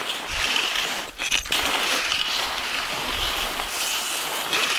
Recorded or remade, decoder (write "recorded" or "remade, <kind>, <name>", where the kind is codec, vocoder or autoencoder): recorded